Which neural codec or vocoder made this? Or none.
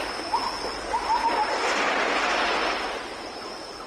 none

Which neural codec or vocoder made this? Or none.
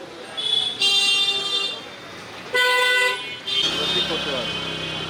none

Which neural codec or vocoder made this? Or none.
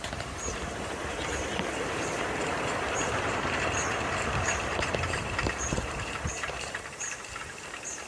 vocoder, BigVGAN v2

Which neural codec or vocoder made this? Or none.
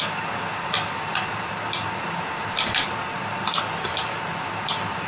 none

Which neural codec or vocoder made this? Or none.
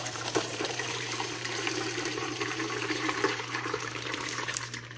vocoder, BigVGAN v2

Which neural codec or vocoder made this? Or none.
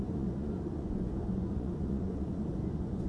vocoder, Vocos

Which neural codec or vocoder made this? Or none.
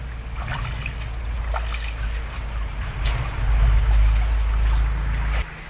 none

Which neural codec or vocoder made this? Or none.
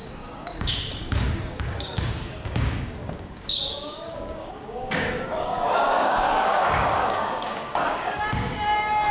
codec, DAC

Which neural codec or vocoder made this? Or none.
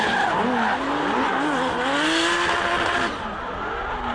none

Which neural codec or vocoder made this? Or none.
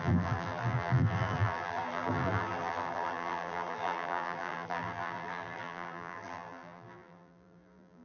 vocoder, BigVGAN v2